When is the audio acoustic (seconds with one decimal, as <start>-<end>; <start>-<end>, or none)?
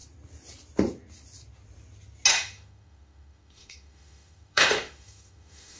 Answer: 0.0-2.3